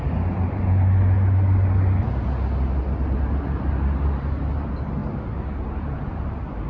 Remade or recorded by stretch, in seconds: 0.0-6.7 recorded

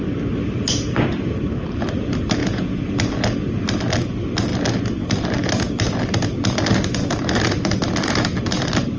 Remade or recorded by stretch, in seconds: 0.0-2.4 recorded; 2.4-2.9 remade; 2.9-9.0 recorded